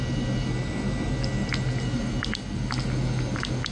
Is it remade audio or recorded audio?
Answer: recorded